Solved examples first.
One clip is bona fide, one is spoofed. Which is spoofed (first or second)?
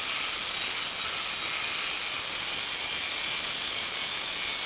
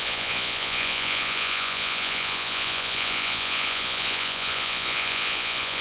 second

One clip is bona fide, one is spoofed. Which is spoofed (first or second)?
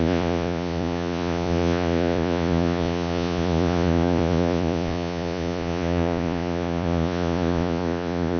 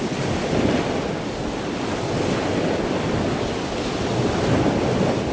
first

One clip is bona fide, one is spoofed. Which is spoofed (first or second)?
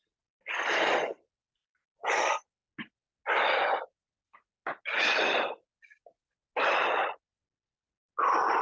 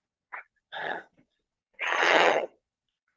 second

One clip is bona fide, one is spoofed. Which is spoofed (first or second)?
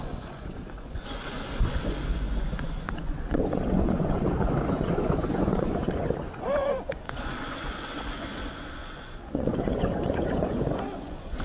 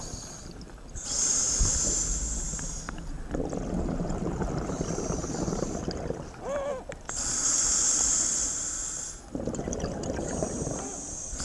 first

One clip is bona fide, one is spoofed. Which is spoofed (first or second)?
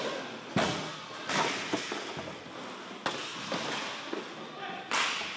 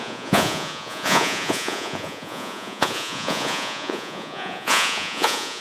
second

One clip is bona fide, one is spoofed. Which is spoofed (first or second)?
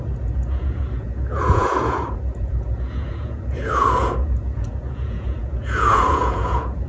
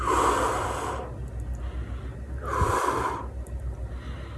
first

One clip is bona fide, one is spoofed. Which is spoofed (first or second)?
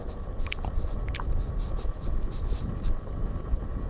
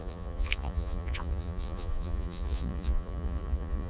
second